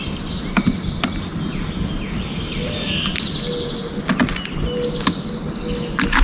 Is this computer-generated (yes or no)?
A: no